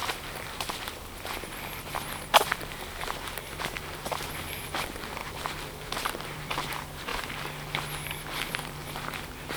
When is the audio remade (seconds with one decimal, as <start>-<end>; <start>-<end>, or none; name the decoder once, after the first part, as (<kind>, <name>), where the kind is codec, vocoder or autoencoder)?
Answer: 0.0-5.2 (vocoder, BigVGAN v2); 6.2-7.1; 8.4-8.8